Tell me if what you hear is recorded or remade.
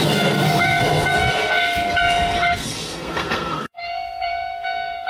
remade